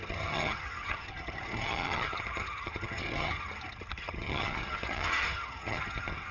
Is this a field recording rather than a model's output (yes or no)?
no